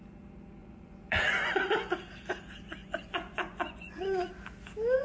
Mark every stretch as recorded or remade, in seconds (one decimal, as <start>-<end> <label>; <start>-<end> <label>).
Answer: 0.0-0.6 recorded; 0.6-1.9 remade; 1.9-2.8 recorded; 2.8-4.3 remade; 4.3-5.0 recorded